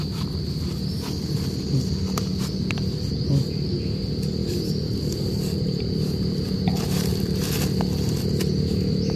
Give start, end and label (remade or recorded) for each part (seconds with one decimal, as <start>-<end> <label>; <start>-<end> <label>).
0.0-4.4 recorded; 4.4-7.4 remade; 7.4-9.2 recorded